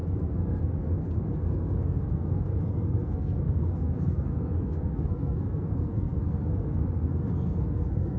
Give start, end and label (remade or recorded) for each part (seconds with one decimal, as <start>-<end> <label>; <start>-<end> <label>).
0.0-8.2 remade